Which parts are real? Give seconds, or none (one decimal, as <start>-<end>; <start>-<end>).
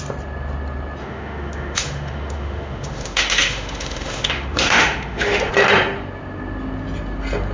0.0-1.0; 5.5-7.5